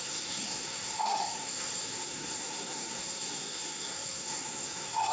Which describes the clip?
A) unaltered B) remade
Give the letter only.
B